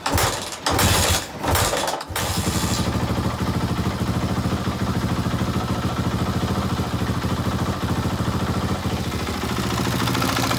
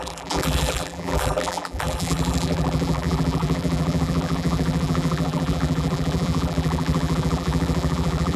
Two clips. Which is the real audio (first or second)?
first